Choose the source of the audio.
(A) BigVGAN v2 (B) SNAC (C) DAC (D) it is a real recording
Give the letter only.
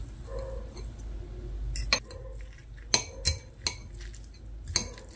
D